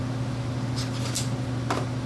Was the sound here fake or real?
real